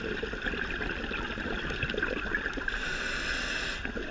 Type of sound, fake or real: real